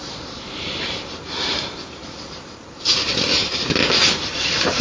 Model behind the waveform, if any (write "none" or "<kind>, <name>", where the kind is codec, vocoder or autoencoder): vocoder, BigVGAN v2